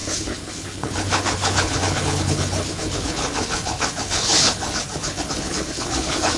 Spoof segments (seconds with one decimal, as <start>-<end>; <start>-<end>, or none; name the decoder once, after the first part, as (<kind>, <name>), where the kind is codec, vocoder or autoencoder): 0.0-6.4 (codec, HILCodec)